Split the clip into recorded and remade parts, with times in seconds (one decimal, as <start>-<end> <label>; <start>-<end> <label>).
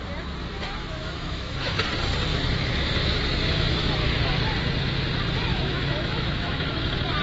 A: 0.0-0.4 recorded; 0.4-1.8 remade; 1.8-2.3 recorded; 2.3-4.3 remade; 4.3-5.5 recorded; 5.5-7.2 remade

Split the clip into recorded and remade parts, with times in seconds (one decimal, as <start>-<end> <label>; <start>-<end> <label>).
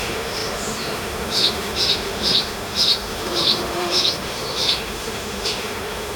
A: 0.0-6.2 remade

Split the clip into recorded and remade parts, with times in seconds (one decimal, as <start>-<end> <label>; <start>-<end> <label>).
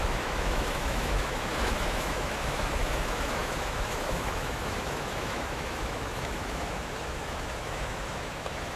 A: 0.0-8.8 remade